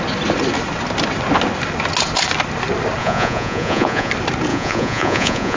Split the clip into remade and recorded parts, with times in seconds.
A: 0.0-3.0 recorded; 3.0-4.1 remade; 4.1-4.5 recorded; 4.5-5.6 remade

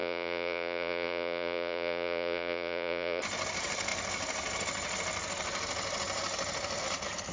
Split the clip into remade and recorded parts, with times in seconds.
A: 0.0-3.2 remade; 3.2-7.3 recorded